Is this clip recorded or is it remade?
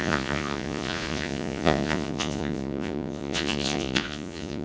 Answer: remade